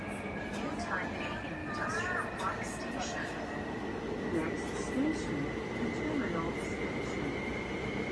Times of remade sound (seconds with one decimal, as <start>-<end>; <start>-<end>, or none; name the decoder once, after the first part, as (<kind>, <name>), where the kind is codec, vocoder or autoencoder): none